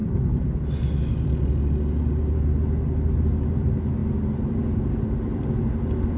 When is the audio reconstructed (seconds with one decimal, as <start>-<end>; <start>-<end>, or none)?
4.0-5.5